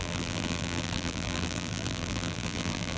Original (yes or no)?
no